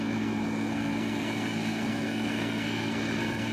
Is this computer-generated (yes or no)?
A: yes